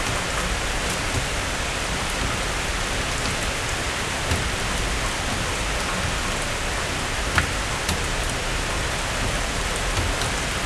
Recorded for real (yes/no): yes